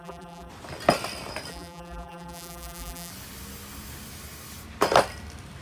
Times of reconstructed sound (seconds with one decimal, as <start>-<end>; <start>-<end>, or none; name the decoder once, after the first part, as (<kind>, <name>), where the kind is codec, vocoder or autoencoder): 0.0-0.5 (vocoder, BigVGAN v2); 1.5-3.1